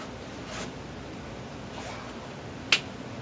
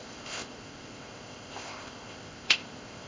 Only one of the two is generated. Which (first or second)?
second